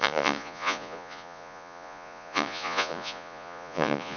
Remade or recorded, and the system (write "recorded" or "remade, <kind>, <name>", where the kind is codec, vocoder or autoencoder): remade, vocoder, Vocos